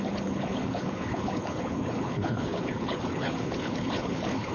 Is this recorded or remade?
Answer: remade